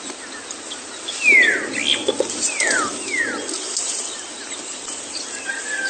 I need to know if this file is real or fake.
real